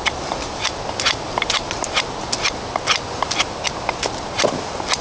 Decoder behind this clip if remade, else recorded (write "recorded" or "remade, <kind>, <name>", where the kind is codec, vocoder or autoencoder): recorded